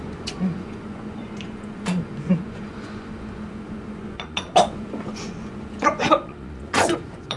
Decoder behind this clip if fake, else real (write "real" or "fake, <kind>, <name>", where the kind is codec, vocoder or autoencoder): fake, vocoder, Vocos